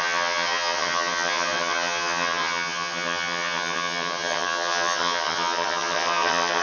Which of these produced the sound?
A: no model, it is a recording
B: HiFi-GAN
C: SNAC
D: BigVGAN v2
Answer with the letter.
B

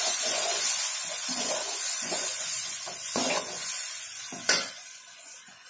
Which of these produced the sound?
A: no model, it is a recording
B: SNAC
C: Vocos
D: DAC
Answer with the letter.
C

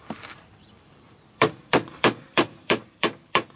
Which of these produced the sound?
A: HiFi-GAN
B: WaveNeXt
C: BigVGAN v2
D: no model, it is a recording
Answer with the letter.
C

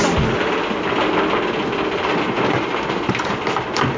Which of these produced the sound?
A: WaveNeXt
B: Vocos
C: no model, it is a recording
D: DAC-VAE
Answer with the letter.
C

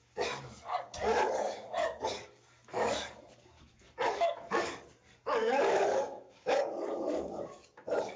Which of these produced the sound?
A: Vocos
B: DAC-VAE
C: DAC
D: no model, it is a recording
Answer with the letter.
C